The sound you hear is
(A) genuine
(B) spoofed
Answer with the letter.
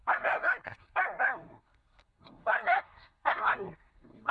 B